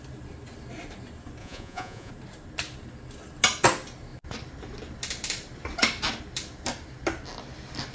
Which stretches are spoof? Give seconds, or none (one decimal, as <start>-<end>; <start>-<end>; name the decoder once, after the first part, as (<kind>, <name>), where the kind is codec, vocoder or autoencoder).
1.4-2.1 (vocoder, Vocos)